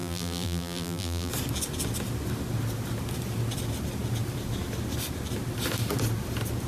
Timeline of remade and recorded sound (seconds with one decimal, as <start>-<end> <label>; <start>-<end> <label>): 0.0-1.3 remade; 1.3-6.7 recorded